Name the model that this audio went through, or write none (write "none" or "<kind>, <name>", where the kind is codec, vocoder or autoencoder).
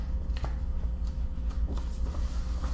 none